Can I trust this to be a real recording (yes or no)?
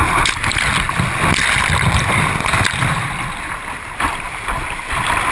yes